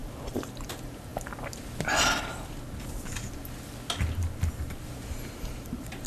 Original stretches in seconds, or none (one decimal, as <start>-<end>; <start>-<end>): 0.0-0.7; 1.1-4.8

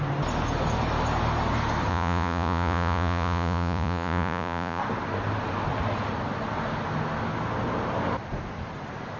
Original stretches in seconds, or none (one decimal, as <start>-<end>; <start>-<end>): 0.0-1.9; 4.8-9.2

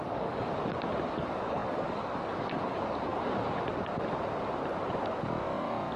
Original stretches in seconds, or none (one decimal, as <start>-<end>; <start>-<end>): 0.5-1.1; 3.1-6.0

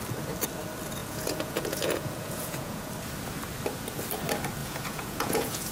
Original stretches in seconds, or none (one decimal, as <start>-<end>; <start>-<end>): 0.0-1.0; 2.9-4.6

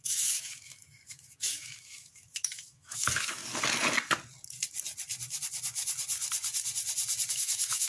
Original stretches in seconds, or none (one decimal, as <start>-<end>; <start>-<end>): 3.4-7.3

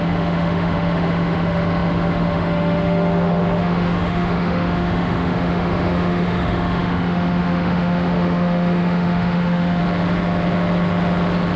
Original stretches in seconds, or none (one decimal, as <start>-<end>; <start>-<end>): 9.8-11.6

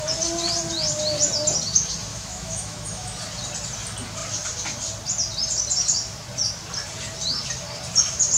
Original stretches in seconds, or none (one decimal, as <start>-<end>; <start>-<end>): 0.0-2.1; 3.2-8.4

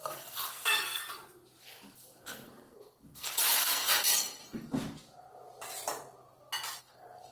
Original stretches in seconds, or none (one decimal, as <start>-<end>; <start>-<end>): 1.0-1.6; 4.4-6.8